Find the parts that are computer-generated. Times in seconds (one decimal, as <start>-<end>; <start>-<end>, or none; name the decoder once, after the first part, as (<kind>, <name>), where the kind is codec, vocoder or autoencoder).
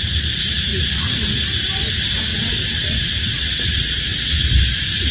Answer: 2.3-4.5 (vocoder, WaveNeXt)